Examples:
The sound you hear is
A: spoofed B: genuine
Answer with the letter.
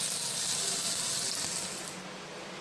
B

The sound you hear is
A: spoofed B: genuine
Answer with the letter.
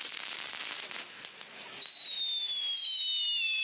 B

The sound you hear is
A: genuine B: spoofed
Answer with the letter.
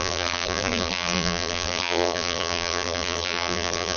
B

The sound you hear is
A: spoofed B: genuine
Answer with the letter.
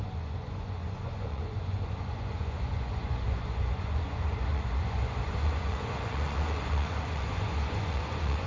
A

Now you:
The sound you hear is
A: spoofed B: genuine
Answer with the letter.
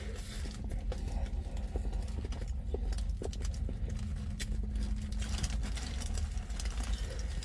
B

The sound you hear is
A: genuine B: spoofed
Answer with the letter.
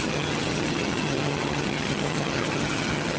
B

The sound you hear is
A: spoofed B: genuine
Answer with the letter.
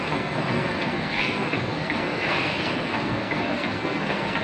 A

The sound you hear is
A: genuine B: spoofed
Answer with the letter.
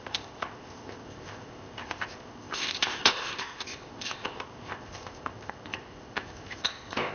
B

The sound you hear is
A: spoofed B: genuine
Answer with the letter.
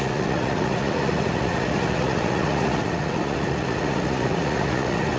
A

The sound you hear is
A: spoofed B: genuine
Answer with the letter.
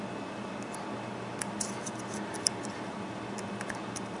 A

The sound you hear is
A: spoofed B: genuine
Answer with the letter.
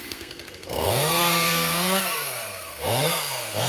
A